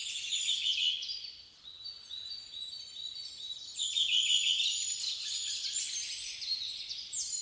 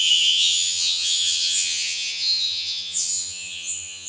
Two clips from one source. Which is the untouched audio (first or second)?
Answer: first